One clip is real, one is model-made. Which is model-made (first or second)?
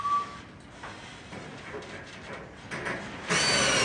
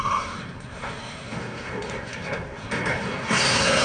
second